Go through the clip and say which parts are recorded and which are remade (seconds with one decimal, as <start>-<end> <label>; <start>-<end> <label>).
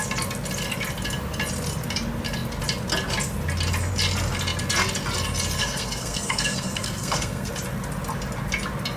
0.0-5.6 recorded; 5.6-7.5 remade; 7.5-9.0 recorded